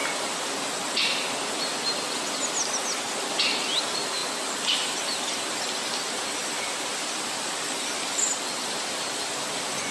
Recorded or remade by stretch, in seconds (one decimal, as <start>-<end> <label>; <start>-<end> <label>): 0.0-9.9 recorded

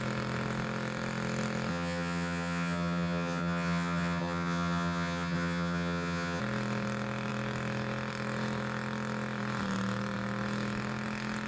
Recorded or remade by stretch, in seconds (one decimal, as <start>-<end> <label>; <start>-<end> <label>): 0.0-1.7 recorded; 1.7-6.4 remade; 6.4-11.5 recorded

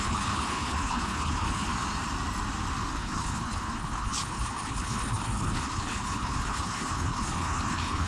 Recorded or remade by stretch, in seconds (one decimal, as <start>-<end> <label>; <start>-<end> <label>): 0.0-1.7 remade; 1.7-2.9 recorded; 2.9-8.1 remade